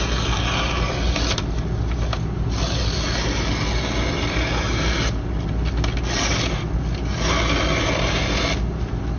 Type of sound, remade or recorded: recorded